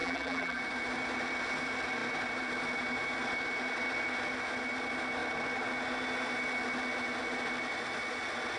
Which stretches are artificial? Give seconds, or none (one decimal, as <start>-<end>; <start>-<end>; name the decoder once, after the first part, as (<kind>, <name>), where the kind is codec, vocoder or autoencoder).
0.0-0.6 (vocoder, BigVGAN v2)